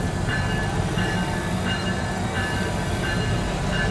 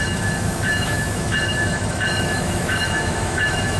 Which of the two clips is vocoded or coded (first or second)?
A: second